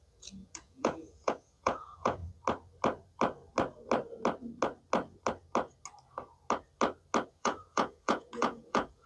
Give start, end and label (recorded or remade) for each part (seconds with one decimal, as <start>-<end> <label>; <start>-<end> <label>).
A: 0.0-2.2 remade; 2.2-7.3 recorded; 7.3-9.1 remade